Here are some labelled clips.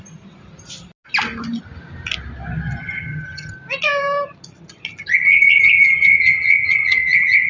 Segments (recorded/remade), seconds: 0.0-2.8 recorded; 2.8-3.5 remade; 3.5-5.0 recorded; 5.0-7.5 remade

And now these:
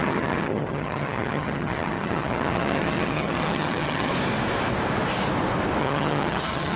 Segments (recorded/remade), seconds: 0.0-4.1 remade; 4.1-5.8 recorded; 5.8-6.8 remade

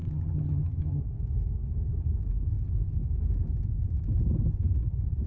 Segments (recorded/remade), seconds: 0.0-1.0 remade; 1.0-5.3 recorded

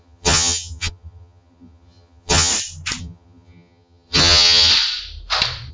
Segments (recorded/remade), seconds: 0.0-2.5 remade; 2.5-3.0 recorded; 3.0-4.7 remade; 4.7-5.7 recorded

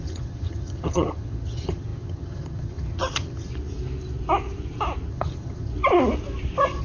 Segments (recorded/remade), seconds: 0.0-3.5 remade; 3.5-5.1 recorded; 5.1-5.7 remade; 5.7-6.8 recorded